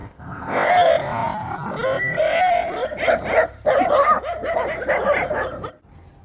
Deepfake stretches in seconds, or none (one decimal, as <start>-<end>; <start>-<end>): 0.0-0.7